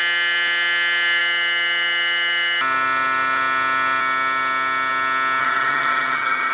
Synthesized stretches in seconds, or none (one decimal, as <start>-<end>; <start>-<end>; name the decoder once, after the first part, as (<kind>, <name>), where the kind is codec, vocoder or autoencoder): 5.4-6.5 (vocoder, HiFi-GAN)